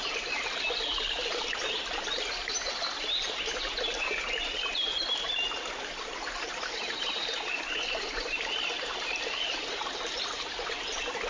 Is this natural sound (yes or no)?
yes